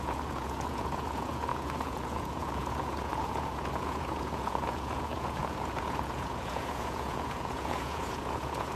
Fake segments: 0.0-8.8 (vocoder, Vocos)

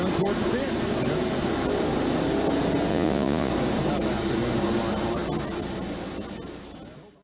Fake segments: 2.9-3.5 (vocoder, Vocos)

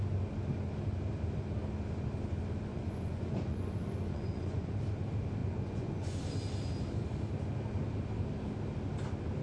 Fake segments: 2.7-4.7 (vocoder, Vocos); 5.4-6.2

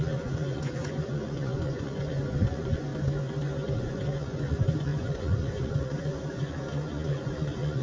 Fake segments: 0.0-2.9 (vocoder, Vocos); 3.8-7.8